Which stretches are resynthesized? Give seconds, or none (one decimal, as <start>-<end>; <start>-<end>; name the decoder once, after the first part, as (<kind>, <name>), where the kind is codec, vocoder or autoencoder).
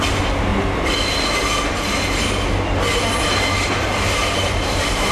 0.0-0.5 (vocoder, BigVGAN v2); 3.6-5.1